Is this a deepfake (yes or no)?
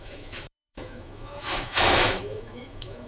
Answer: yes